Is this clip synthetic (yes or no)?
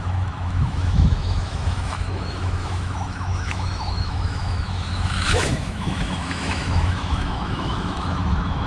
yes